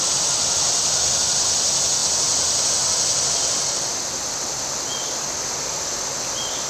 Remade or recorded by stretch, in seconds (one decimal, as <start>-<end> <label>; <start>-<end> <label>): 0.0-6.7 recorded

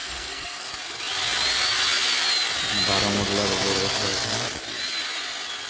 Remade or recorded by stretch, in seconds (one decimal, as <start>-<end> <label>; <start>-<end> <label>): 0.0-0.7 remade; 0.7-5.7 recorded

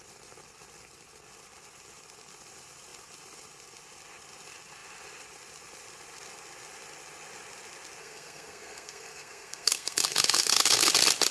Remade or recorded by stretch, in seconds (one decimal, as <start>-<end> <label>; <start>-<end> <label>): 0.0-8.0 recorded; 8.0-10.9 remade; 10.9-11.3 recorded

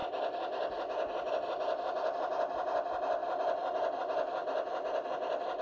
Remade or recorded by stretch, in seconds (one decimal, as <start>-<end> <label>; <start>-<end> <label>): 0.0-5.6 recorded

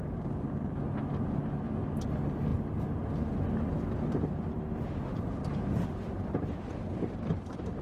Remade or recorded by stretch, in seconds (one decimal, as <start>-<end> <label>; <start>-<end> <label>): 0.0-7.8 recorded

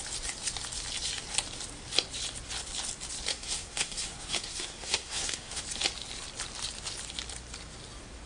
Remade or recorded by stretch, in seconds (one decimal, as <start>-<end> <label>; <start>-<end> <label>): 0.0-3.3 recorded; 3.3-5.6 remade; 5.6-8.3 recorded